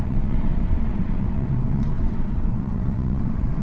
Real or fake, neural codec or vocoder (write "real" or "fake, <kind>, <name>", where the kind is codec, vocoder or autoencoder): fake, vocoder, WaveNeXt